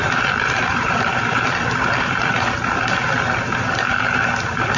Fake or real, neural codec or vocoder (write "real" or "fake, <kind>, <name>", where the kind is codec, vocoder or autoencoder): fake, vocoder, BigVGAN v2